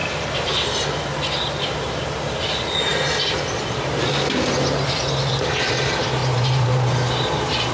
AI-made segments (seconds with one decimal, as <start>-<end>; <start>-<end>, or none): 0.0-0.5; 6.2-7.3